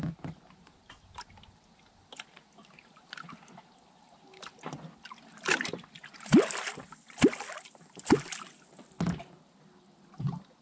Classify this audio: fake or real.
real